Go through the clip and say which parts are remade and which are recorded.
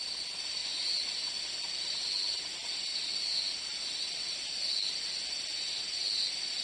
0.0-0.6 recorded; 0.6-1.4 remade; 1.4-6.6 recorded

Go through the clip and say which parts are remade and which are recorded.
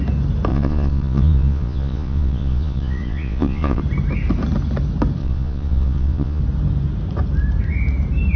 0.0-0.5 recorded; 0.5-3.8 remade; 3.8-5.2 recorded; 5.2-6.4 remade; 6.4-8.4 recorded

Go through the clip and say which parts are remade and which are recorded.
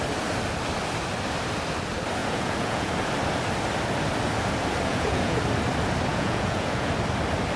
0.0-2.2 recorded; 2.2-2.9 remade; 2.9-4.9 recorded; 4.9-5.4 remade; 5.4-6.1 recorded; 6.1-6.9 remade; 6.9-7.6 recorded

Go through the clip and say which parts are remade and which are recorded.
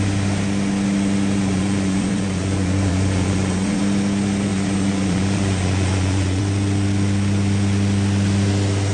0.0-1.4 recorded; 1.4-3.8 remade; 3.8-4.5 recorded; 4.5-6.4 remade; 6.4-8.9 recorded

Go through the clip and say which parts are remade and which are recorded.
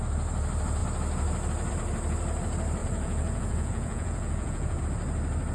0.0-2.8 recorded; 2.8-4.8 remade; 4.8-5.5 recorded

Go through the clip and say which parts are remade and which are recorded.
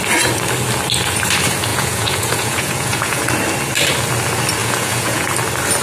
0.0-1.7 recorded; 1.7-3.2 remade; 3.2-4.6 recorded; 4.6-5.3 remade; 5.3-5.8 recorded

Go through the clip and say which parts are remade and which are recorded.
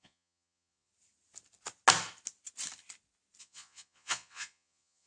0.0-0.9 remade; 0.9-3.4 recorded; 3.4-5.1 remade